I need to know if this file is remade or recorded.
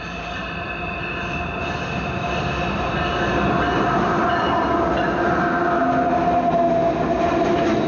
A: recorded